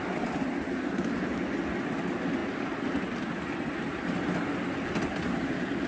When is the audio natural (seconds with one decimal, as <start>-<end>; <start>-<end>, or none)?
0.0-5.9